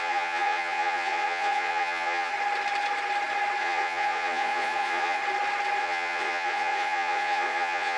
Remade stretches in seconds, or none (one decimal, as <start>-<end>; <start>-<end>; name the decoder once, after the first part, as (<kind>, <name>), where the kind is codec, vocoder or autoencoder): 0.0-2.3 (vocoder, Vocos); 3.6-5.2; 5.8-8.0